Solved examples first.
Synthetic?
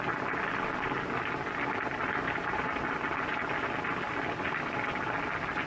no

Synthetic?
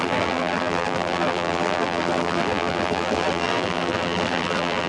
yes